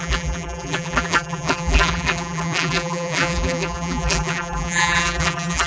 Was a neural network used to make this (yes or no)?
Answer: yes